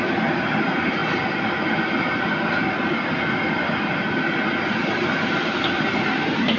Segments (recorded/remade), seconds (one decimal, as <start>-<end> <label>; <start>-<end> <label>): 0.0-6.6 recorded

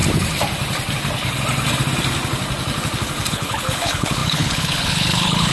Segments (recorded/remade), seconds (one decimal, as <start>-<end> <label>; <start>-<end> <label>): 0.0-3.3 recorded; 3.3-5.5 remade

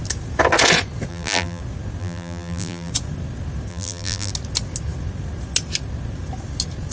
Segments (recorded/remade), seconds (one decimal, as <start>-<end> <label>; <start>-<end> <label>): 0.0-1.1 recorded; 1.1-1.6 remade; 1.6-2.0 recorded; 2.0-2.9 remade; 2.9-3.7 recorded; 3.7-4.3 remade; 4.3-6.9 recorded